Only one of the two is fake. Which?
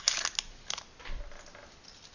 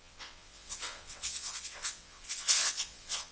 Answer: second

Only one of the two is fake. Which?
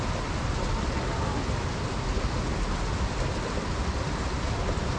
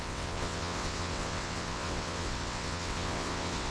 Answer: second